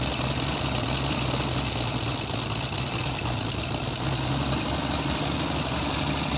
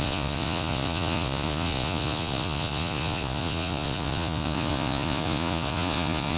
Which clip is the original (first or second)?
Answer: first